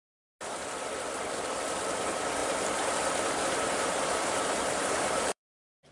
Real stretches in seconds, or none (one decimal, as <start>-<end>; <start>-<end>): 0.0-2.4